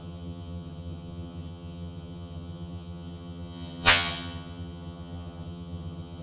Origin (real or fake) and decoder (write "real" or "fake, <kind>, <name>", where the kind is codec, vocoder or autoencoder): fake, vocoder, HiFi-GAN